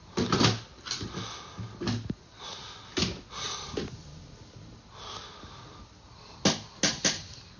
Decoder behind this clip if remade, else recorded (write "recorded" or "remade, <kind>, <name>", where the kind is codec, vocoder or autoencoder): recorded